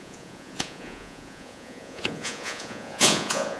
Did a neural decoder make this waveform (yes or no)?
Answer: yes